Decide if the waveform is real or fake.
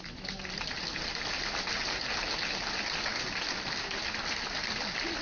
real